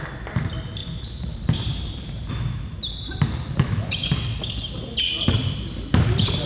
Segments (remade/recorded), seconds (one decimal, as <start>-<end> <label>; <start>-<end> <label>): 0.0-0.8 recorded; 0.8-2.3 remade; 2.3-6.5 recorded